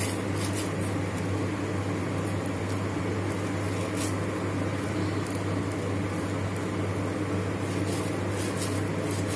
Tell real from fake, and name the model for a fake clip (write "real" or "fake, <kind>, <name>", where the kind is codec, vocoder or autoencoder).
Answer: real